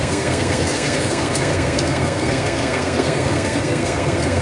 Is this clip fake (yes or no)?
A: yes